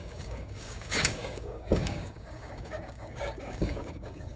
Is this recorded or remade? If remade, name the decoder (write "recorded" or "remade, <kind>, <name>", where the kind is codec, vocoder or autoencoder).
remade, codec, DAC